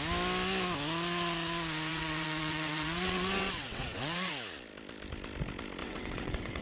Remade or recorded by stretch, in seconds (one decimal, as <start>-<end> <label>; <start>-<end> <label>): 0.0-1.9 recorded; 1.9-4.3 remade; 4.3-5.8 recorded; 5.8-6.6 remade